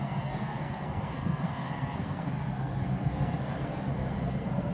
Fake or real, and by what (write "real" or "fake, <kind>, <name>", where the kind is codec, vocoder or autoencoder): fake, codec, SNAC